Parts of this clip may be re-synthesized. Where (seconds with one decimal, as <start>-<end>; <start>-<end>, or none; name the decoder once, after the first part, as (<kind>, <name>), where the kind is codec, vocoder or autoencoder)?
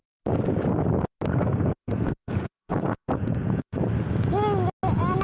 1.5-3.8 (vocoder, Vocos)